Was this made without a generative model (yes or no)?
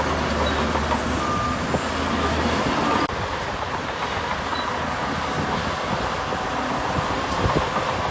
yes